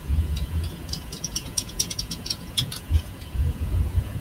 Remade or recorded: remade